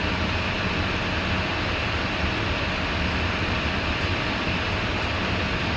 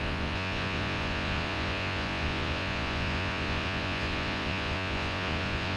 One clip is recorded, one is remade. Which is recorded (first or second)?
first